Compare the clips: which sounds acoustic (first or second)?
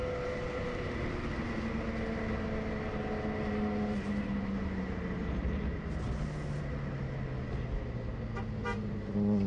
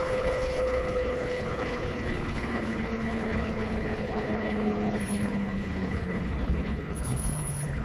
first